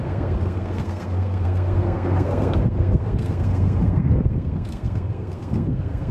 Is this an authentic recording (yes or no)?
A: no